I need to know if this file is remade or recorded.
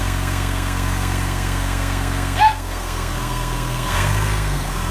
remade